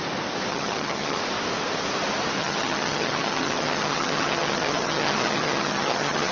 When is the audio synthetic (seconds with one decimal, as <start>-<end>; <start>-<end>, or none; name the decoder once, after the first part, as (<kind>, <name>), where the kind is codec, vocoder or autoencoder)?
0.5-1.2 (vocoder, HiFi-GAN); 2.4-6.3